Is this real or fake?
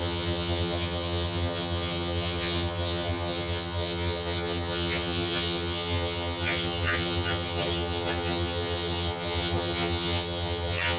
fake